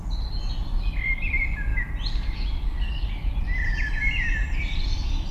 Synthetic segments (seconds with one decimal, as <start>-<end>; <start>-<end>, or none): none

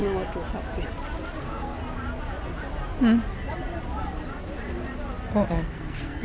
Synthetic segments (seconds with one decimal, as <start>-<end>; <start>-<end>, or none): 1.4-1.8; 5.5-6.2

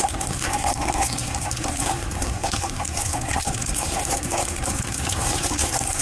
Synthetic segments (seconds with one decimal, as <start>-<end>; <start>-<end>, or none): 0.0-6.0

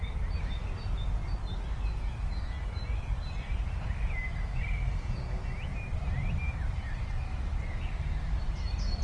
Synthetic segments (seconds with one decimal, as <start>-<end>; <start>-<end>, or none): none

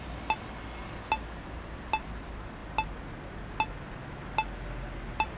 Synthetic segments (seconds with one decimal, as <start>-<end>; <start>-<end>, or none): none